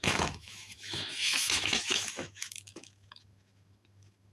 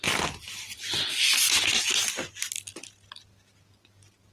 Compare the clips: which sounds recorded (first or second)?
second